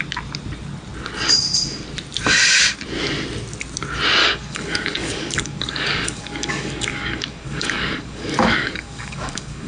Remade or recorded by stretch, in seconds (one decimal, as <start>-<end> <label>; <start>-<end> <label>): 0.0-4.2 recorded; 4.2-9.7 remade

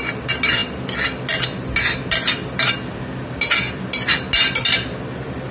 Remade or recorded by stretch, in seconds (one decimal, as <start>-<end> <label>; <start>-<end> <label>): 0.0-5.5 recorded

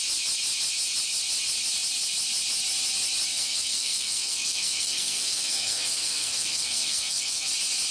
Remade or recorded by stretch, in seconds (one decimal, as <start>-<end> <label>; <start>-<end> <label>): 0.0-3.3 recorded; 3.3-7.5 remade; 7.5-7.9 recorded

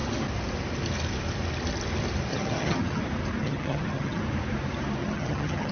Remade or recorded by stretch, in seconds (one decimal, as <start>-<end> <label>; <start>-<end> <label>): 0.0-2.3 recorded; 2.3-3.0 remade; 3.0-3.4 recorded; 3.4-4.2 remade; 4.2-5.0 recorded; 5.0-5.7 remade

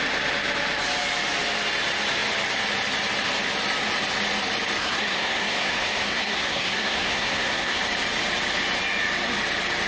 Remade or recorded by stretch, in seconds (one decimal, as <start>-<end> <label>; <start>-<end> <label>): 0.0-4.8 recorded; 4.8-7.8 remade; 7.8-9.9 recorded

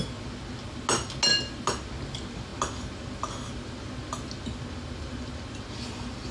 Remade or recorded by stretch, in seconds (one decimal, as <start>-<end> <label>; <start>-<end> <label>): 0.0-6.3 recorded

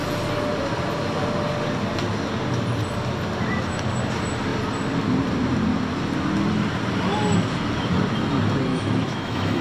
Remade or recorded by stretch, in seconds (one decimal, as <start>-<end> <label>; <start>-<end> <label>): 0.0-8.7 recorded; 8.7-9.6 remade

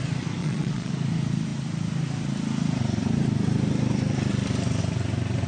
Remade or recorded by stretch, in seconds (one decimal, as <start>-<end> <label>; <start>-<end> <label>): 0.0-0.4 recorded; 0.4-0.9 remade; 0.9-5.5 recorded